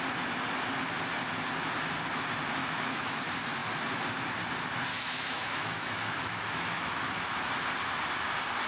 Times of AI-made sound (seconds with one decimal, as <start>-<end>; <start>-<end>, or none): 2.6-3.2; 4.9-7.4